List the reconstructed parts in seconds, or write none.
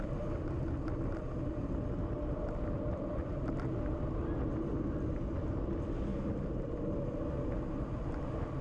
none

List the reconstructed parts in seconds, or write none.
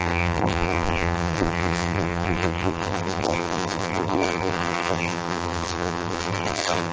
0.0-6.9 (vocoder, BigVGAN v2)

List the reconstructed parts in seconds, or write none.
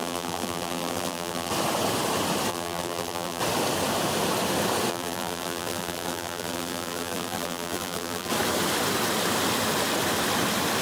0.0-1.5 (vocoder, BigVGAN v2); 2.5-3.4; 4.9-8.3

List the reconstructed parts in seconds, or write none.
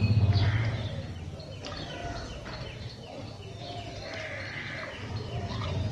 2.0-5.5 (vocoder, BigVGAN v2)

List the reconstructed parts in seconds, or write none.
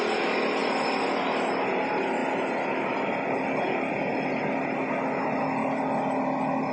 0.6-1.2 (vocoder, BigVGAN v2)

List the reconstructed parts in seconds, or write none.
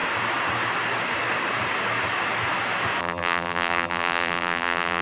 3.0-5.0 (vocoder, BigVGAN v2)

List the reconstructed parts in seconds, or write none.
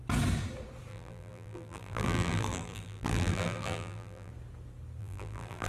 0.9-4.3 (vocoder, BigVGAN v2); 5.0-5.7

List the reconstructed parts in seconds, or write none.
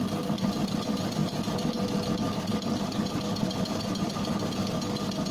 none